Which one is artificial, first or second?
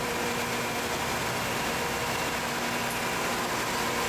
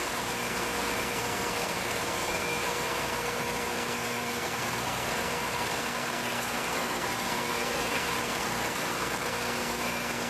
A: second